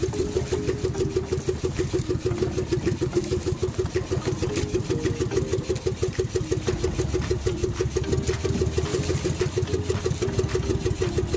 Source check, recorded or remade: recorded